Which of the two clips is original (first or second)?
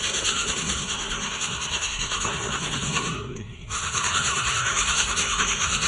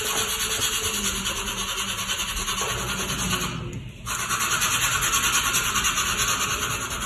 second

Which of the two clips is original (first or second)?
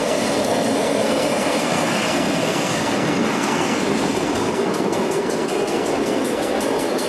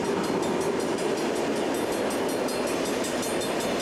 second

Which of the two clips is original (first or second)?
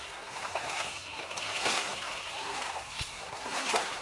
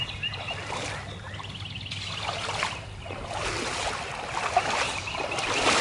second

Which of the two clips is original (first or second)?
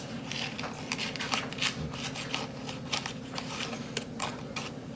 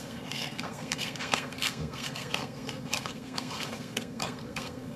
first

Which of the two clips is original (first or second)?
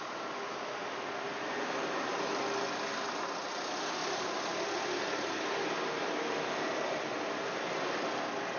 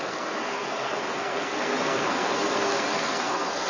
first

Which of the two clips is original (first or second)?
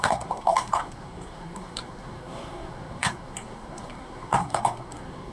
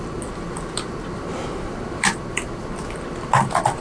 second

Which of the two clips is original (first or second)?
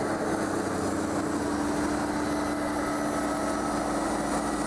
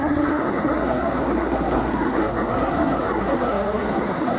first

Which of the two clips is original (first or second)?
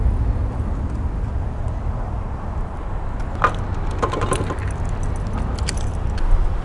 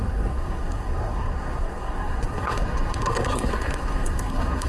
first